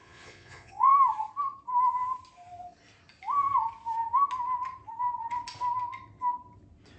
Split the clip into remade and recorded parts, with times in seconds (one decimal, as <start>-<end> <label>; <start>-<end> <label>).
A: 0.0-0.9 remade; 0.9-7.0 recorded